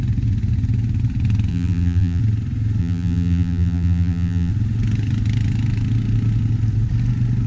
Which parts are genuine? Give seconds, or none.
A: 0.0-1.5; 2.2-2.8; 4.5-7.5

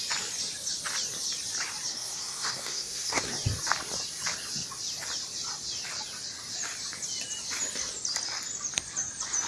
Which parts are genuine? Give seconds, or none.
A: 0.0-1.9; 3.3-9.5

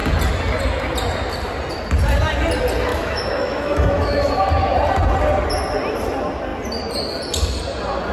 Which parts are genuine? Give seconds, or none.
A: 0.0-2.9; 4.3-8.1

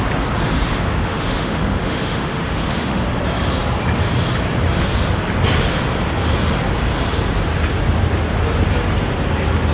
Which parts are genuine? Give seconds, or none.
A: 0.0-0.7; 3.0-9.7